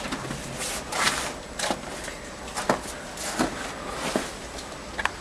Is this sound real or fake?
real